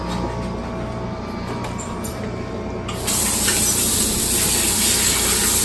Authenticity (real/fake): real